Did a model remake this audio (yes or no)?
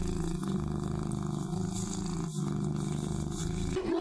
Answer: no